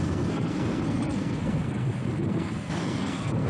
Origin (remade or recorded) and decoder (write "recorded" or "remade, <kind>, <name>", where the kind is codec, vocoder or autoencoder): remade, codec, SNAC